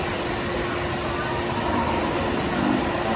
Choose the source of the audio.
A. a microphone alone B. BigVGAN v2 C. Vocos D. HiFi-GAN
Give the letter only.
A